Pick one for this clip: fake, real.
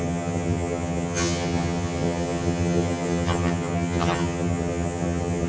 fake